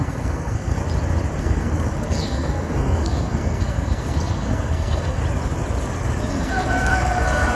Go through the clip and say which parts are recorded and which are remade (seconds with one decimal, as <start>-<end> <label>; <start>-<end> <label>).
0.0-0.8 remade; 0.8-1.4 recorded; 1.4-5.2 remade; 5.2-6.3 recorded; 6.3-7.5 remade